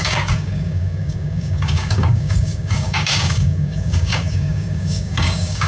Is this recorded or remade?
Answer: remade